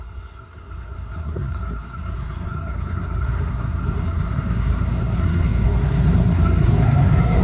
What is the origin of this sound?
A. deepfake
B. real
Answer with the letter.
A